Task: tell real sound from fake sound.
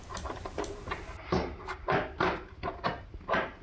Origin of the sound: real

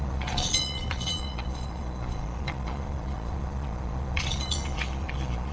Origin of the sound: fake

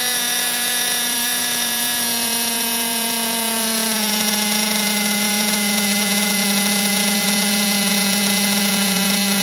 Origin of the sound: fake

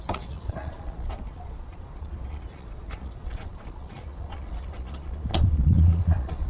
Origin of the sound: fake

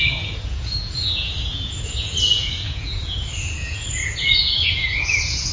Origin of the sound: fake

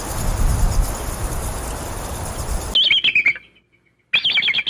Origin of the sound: real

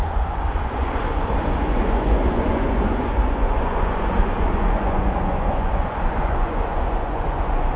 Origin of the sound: fake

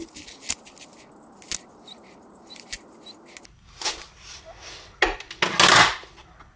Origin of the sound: real